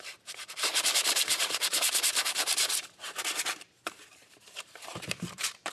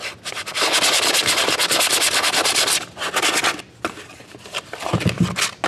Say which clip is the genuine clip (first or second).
second